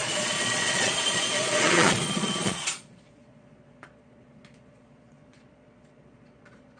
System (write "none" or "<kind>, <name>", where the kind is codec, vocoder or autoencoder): vocoder, Vocos